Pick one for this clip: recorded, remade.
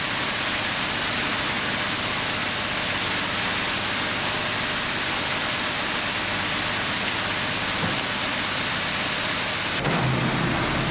recorded